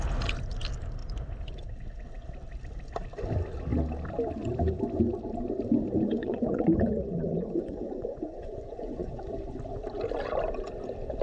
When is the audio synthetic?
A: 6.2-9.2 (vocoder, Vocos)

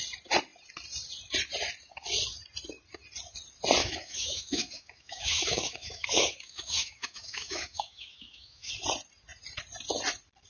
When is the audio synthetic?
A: 3.8-8.7 (autoencoder, DAC-VAE)